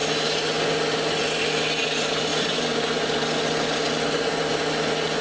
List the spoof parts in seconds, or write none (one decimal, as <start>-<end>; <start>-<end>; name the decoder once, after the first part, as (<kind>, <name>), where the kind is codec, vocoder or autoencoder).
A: none